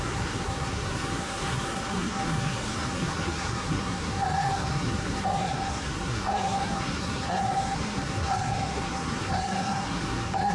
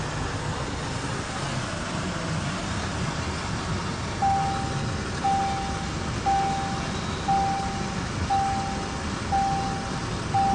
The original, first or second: second